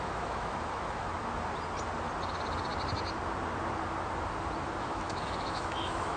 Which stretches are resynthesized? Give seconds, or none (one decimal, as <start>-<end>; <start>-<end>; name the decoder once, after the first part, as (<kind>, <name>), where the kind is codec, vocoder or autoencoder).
0.0-1.1 (autoencoder, DAC-VAE); 4.8-6.2

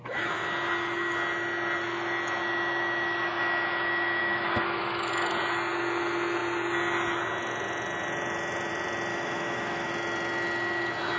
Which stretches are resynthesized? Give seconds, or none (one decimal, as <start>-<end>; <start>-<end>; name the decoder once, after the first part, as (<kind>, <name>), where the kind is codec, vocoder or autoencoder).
4.2-5.1 (autoencoder, DAC-VAE); 9.1-9.9

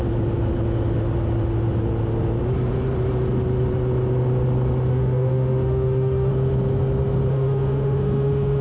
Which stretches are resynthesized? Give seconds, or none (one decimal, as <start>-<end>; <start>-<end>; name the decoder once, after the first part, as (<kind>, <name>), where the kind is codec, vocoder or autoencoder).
4.9-6.3 (autoencoder, DAC-VAE); 7.3-8.6

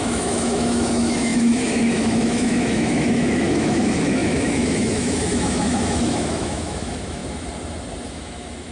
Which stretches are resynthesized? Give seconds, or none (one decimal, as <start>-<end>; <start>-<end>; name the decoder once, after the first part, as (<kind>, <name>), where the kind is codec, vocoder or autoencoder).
0.0-7.2 (autoencoder, DAC-VAE); 8.1-8.7